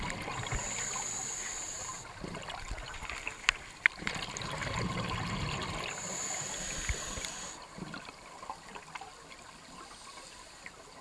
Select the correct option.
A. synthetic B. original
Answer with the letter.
B